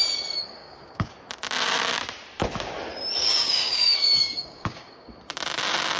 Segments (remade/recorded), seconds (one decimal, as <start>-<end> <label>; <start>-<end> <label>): 0.0-0.6 recorded; 0.6-1.1 remade; 1.1-3.2 recorded; 3.2-5.1 remade; 5.1-6.0 recorded